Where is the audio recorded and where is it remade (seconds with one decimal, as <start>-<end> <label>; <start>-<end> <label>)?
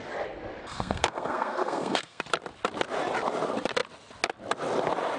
0.0-0.6 recorded; 0.6-2.2 remade; 2.2-5.2 recorded